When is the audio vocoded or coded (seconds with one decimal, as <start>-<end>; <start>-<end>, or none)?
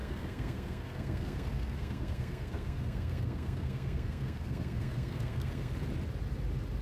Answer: 0.0-5.7